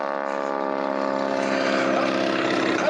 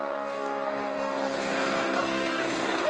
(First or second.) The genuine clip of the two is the first